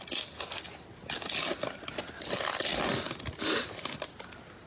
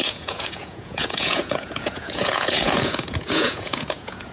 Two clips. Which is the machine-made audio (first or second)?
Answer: second